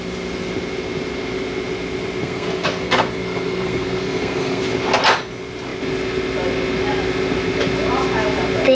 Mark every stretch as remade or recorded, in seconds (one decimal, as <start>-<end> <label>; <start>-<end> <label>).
0.0-2.2 recorded; 2.2-4.6 remade; 4.6-8.7 recorded